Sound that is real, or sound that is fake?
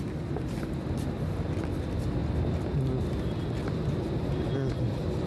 real